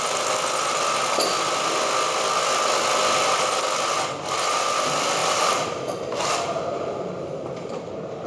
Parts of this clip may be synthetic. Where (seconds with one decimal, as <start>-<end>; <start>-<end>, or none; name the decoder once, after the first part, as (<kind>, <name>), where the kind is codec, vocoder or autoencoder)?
5.2-7.7 (vocoder, BigVGAN v2)